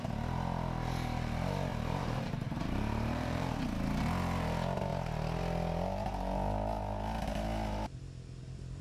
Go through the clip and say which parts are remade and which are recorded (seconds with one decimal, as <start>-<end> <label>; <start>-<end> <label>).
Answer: 0.0-1.7 recorded; 1.7-3.5 remade; 3.5-8.8 recorded